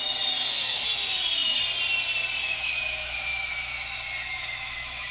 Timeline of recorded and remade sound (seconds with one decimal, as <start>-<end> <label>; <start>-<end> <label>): 0.0-0.5 recorded; 0.5-1.6 remade; 1.6-2.4 recorded; 2.4-5.1 remade